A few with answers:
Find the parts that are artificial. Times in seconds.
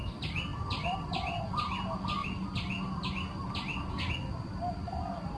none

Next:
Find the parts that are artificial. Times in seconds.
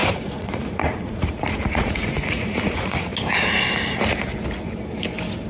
0.0-3.1 (vocoder, Vocos)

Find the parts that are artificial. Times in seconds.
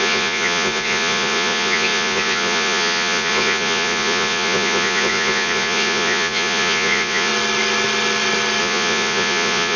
0.0-7.3 (vocoder, Vocos); 8.6-9.8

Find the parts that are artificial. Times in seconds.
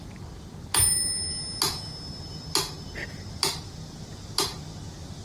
none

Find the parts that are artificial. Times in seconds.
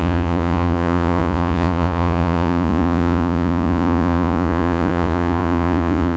0.0-6.2 (vocoder, Vocos)